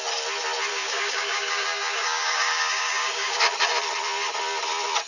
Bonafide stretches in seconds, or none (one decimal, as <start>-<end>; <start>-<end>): 0.0-0.7; 3.4-5.1